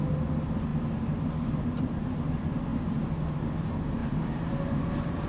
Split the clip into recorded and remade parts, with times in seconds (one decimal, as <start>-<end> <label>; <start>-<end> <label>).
0.0-5.3 recorded

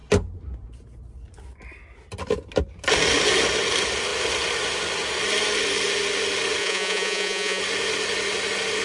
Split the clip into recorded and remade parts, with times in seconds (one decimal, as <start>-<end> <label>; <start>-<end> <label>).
0.0-6.6 recorded; 6.6-7.6 remade; 7.6-8.8 recorded

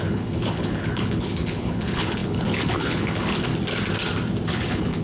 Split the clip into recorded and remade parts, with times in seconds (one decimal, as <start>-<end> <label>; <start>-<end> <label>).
0.0-3.5 remade; 3.5-4.5 recorded; 4.5-5.0 remade

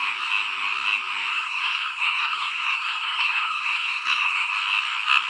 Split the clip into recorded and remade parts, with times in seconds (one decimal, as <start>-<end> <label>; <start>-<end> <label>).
0.0-1.3 recorded; 1.3-4.5 remade; 4.5-5.3 recorded